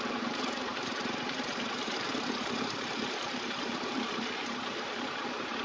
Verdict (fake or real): fake